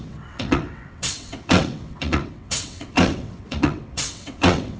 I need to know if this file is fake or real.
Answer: fake